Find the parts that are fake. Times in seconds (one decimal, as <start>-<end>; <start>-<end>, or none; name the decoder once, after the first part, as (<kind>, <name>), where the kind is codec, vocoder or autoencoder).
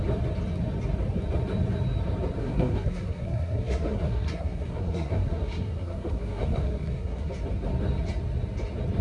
2.4-7.3 (codec, SNAC)